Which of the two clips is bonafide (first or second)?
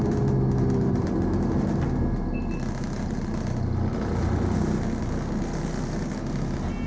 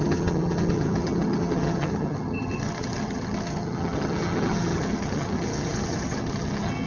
first